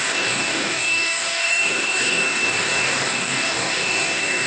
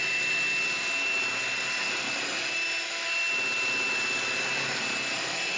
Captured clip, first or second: second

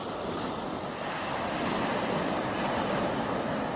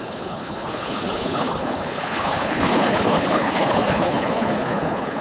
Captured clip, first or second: first